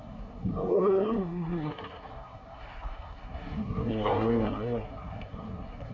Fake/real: fake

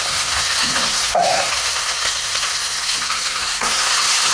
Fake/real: fake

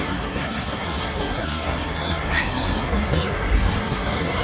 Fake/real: fake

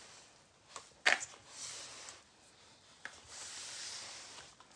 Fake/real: real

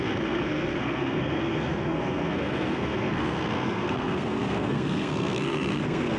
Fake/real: fake